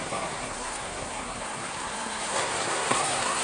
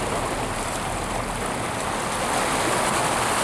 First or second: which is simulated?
first